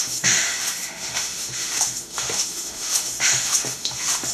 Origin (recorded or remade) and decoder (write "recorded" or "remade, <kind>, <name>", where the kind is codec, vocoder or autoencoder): remade, autoencoder, DAC-VAE